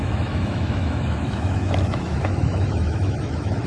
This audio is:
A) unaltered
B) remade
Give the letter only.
B